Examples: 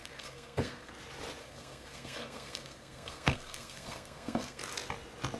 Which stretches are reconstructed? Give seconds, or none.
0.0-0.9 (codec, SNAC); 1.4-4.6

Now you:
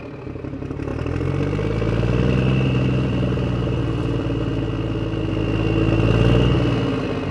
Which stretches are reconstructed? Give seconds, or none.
0.9-5.3 (vocoder, BigVGAN v2)

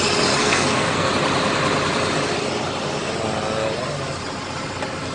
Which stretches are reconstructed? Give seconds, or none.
0.4-1.1 (codec, SNAC)

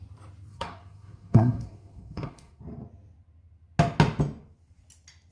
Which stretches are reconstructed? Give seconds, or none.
0.5-2.6 (codec, SNAC)

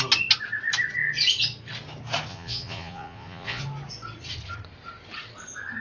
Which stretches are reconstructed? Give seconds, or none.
2.3-3.6 (vocoder, Vocos)

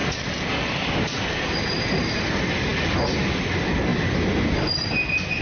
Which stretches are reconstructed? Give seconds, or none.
none